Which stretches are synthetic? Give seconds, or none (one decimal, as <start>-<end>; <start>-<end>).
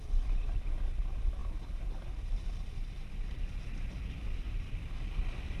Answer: 0.0-5.6